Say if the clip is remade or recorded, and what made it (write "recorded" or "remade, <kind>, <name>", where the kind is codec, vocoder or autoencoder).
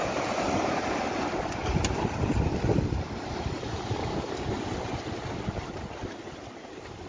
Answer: remade, vocoder, BigVGAN v2